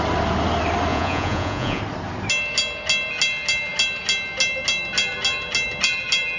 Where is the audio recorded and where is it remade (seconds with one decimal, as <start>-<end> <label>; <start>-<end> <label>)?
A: 0.0-0.9 recorded; 0.9-1.8 remade; 1.8-6.4 recorded